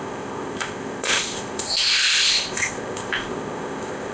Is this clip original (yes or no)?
no